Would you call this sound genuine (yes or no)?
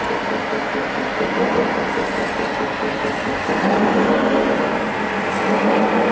yes